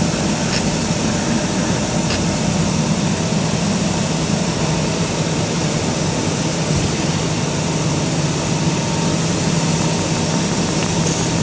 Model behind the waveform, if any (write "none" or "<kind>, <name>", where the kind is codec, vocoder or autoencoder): none